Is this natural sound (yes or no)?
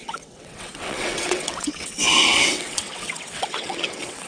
no